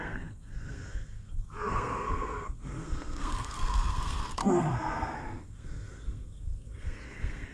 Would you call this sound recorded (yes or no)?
no